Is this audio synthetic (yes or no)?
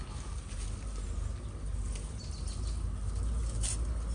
no